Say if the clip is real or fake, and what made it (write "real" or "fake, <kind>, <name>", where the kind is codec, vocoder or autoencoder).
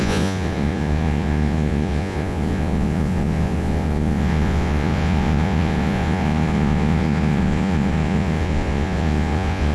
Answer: fake, vocoder, Vocos